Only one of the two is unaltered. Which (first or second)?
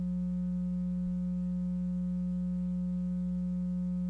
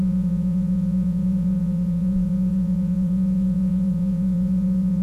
first